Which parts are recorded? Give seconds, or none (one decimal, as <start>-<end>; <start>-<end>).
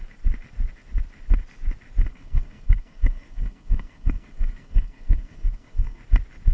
0.0-2.1; 6.0-6.5